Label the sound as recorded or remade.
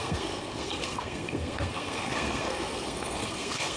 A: remade